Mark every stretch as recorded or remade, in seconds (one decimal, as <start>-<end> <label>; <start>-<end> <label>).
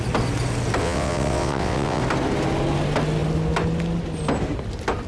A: 0.0-0.8 recorded; 0.8-2.0 remade; 2.0-5.1 recorded